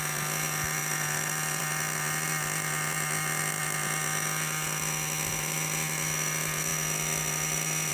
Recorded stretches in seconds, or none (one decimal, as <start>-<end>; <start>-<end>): 0.0-0.8; 1.6-7.9